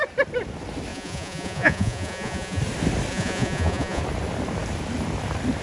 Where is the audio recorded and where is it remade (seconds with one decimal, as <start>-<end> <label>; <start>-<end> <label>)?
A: 0.0-0.9 recorded; 0.9-2.6 remade; 2.6-3.1 recorded; 3.1-4.0 remade; 4.0-5.6 recorded